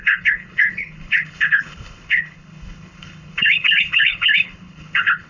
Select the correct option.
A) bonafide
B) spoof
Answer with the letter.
B